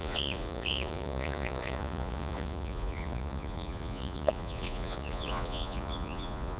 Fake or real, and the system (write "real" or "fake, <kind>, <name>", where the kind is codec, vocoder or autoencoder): fake, vocoder, Vocos